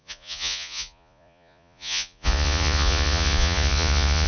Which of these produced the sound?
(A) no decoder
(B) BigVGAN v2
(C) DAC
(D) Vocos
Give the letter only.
D